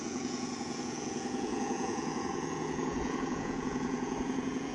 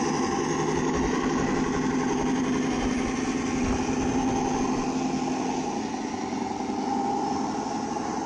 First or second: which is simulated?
first